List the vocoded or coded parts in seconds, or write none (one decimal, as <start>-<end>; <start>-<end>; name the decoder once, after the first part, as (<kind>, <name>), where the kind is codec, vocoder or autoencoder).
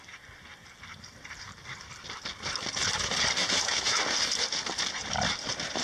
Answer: 3.4-4.0 (autoencoder, DAC-VAE)